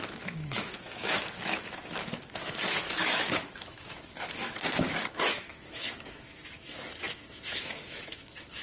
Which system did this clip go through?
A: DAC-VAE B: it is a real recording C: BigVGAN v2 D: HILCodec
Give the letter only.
A